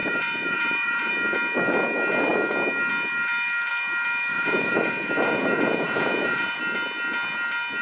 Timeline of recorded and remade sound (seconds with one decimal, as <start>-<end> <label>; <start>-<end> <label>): 0.0-1.1 remade; 1.1-4.3 recorded; 4.3-6.6 remade; 6.6-7.8 recorded